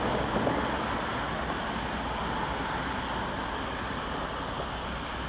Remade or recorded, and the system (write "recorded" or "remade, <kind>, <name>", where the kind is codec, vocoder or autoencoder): recorded